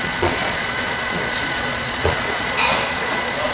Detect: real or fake fake